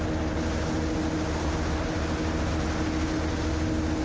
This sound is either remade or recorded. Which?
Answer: recorded